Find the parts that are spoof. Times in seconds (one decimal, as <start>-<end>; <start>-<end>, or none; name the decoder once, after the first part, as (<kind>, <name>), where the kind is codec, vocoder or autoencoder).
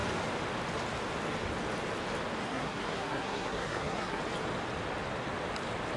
2.4-4.2 (codec, SNAC)